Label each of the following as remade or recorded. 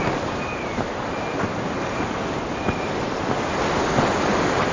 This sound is recorded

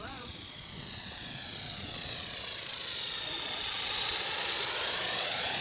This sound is remade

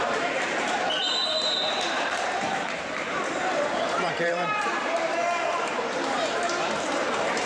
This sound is remade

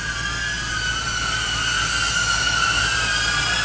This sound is recorded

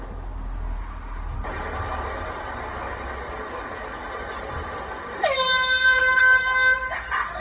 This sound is recorded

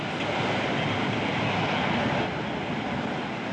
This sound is recorded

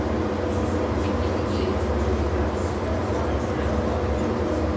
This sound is recorded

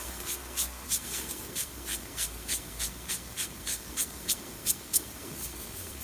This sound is remade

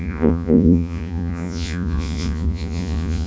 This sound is remade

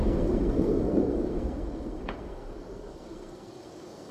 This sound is remade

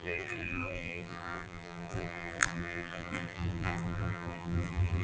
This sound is remade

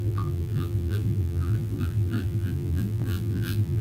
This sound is remade